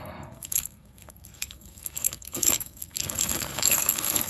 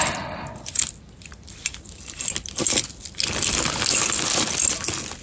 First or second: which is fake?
first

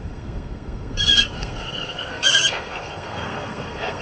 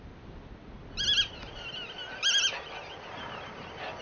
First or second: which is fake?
first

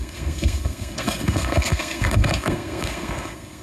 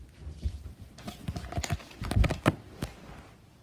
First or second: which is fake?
first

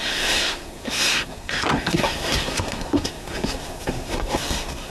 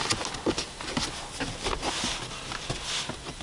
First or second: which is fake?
first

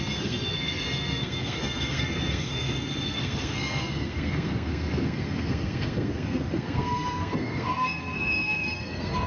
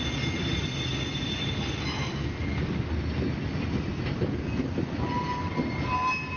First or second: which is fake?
first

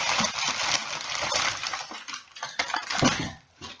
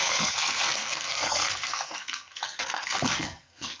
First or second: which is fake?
second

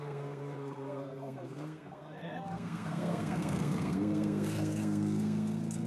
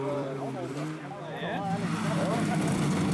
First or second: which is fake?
first